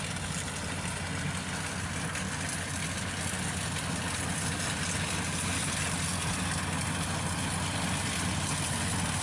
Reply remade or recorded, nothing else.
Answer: recorded